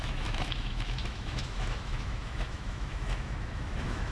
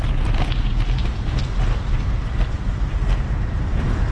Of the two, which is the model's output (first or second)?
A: first